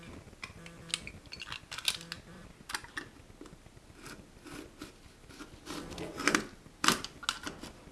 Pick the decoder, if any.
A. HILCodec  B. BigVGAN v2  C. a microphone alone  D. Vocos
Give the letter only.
C